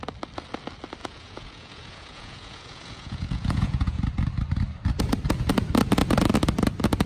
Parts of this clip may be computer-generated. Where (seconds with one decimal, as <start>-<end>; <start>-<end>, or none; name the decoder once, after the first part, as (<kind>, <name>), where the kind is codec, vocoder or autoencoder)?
1.0-4.0 (vocoder, Vocos)